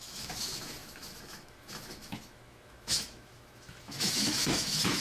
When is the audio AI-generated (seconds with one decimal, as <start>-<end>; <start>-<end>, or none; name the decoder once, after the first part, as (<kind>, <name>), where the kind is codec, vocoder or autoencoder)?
0.0-5.0 (autoencoder, DAC-VAE)